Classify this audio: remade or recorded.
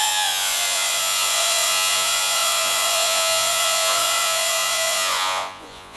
remade